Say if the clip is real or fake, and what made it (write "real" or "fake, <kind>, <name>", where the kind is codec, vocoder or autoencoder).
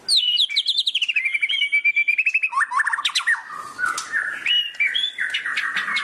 real